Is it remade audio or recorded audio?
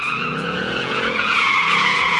remade